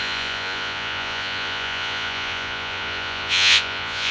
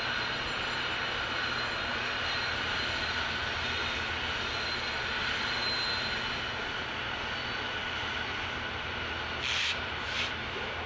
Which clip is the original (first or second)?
second